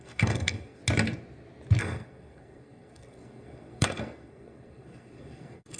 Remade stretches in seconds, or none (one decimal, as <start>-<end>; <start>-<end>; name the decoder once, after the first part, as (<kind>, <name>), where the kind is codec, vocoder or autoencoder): 0.0-0.8 (codec, SNAC); 1.8-5.8